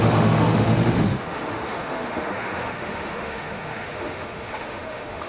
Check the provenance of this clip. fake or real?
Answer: fake